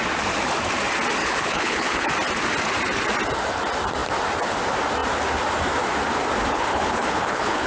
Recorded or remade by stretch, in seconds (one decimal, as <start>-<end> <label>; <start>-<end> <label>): 0.0-1.2 recorded; 1.2-2.1 remade; 2.1-6.5 recorded; 6.5-7.7 remade